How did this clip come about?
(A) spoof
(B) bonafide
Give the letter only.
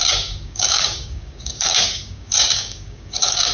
A